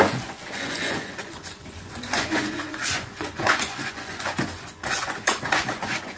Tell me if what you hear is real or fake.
fake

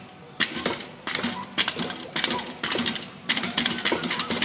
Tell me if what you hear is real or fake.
real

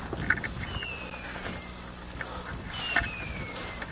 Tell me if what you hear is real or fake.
real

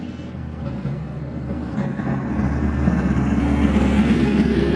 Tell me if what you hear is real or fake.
fake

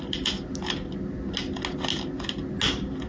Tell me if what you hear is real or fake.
real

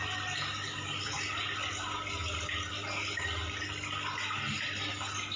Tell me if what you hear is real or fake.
real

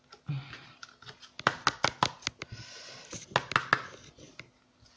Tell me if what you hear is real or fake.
real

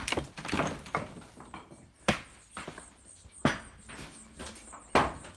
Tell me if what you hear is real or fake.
real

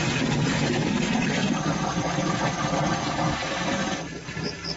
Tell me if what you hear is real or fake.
real